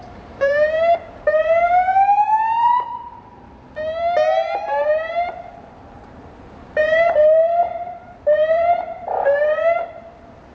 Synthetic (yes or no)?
yes